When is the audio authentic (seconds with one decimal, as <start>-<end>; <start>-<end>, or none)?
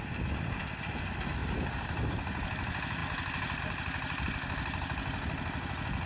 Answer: 0.0-1.4; 2.1-6.1